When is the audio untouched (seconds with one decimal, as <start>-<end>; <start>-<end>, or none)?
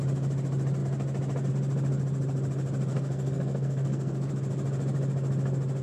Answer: 0.0-2.9; 4.3-5.8